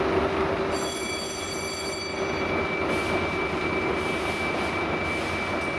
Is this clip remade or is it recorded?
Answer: recorded